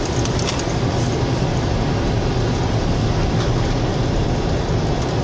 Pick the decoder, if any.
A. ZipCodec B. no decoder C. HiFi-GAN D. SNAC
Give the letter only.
B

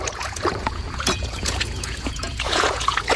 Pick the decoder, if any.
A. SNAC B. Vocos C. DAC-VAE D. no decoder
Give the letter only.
B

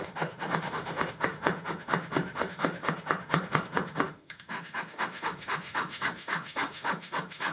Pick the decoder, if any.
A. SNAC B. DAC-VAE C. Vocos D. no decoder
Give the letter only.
B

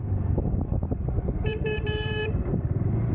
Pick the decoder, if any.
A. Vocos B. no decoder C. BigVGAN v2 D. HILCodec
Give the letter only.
C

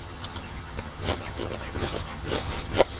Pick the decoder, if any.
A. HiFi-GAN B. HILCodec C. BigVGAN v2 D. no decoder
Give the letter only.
A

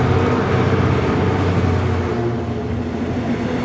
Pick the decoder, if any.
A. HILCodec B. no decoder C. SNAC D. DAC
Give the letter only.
B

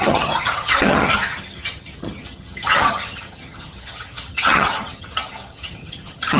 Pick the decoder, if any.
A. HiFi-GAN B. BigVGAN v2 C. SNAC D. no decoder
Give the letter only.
A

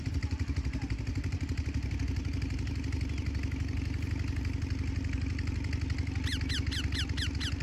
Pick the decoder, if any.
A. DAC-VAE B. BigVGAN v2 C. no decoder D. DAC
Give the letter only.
C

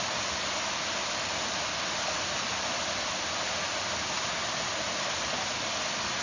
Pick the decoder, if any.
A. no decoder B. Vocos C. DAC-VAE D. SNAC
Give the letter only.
A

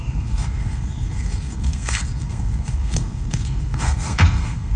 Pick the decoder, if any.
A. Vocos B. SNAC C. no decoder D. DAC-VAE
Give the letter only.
B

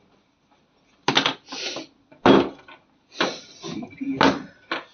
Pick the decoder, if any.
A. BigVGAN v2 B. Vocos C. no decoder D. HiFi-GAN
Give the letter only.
C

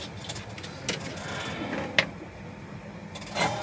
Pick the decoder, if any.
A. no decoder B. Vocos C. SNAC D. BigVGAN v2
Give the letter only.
A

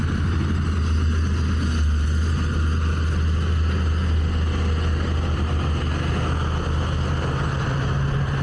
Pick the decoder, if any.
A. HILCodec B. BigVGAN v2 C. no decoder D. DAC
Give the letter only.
C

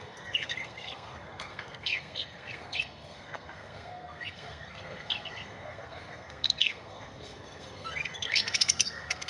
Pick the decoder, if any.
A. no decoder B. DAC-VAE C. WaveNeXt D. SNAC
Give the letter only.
D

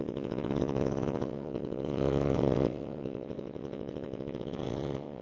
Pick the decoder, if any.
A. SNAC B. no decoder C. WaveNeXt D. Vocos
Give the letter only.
C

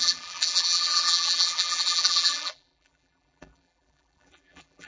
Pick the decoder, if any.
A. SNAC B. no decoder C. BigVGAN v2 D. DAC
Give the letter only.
C